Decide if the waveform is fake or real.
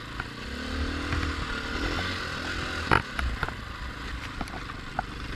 real